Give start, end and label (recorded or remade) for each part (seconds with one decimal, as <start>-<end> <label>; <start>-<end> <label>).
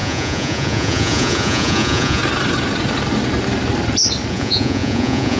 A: 0.0-2.2 remade; 2.2-4.3 recorded; 4.3-5.4 remade